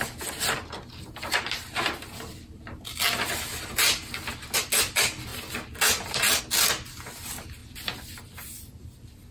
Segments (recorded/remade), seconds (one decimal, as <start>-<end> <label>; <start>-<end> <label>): 0.0-7.6 recorded; 7.6-9.3 remade